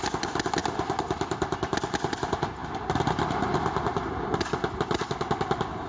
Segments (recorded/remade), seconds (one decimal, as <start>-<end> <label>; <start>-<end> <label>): 0.0-5.9 recorded